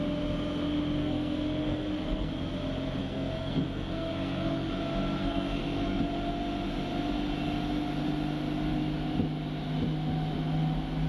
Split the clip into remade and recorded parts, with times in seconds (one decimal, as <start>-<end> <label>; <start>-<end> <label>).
0.0-1.0 recorded; 1.0-2.3 remade; 2.3-3.0 recorded; 3.0-4.8 remade; 4.8-5.2 recorded; 5.2-6.0 remade; 6.0-11.1 recorded